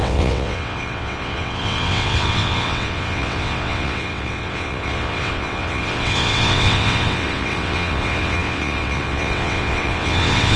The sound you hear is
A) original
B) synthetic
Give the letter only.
B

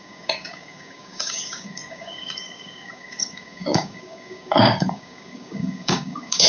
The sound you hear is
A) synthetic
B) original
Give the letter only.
A